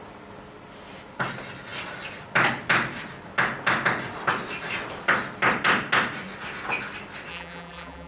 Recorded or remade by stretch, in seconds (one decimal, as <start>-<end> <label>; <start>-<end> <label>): 0.0-7.3 recorded; 7.3-8.1 remade